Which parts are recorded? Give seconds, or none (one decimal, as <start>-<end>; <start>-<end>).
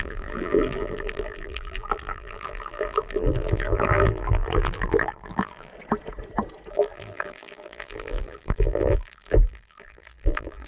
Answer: 5.7-6.7